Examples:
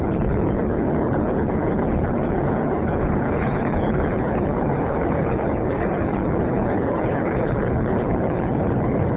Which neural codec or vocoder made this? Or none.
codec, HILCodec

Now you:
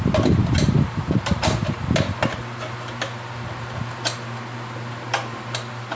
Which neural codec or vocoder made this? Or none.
vocoder, BigVGAN v2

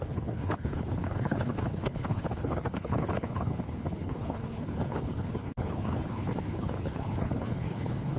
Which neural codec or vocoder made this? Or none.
codec, HILCodec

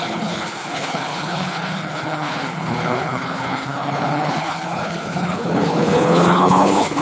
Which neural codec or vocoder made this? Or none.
codec, HILCodec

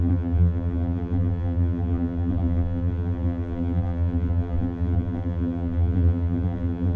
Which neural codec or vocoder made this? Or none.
vocoder, BigVGAN v2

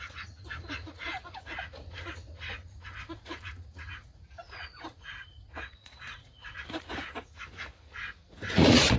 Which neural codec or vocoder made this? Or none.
vocoder, Vocos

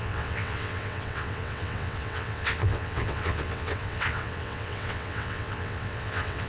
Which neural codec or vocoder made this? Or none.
vocoder, WaveNeXt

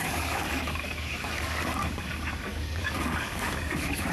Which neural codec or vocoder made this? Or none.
codec, DAC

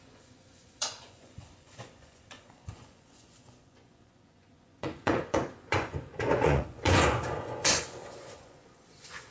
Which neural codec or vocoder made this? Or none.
vocoder, Vocos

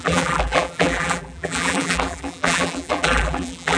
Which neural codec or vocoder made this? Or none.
vocoder, BigVGAN v2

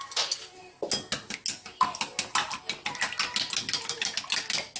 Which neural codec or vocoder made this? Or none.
none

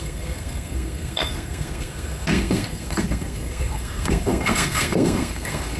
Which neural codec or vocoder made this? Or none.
codec, SNAC